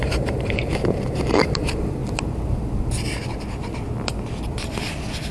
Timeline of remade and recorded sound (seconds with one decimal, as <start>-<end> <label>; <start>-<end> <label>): 0.0-2.0 remade; 2.0-5.3 recorded